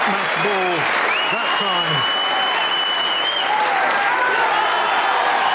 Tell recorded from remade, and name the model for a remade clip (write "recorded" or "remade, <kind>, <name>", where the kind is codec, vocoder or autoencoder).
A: recorded